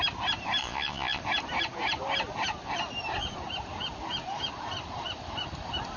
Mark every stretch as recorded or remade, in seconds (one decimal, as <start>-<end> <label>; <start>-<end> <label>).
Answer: 0.0-0.6 recorded; 0.6-1.2 remade; 1.2-6.0 recorded